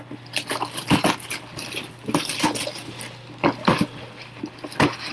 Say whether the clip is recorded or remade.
recorded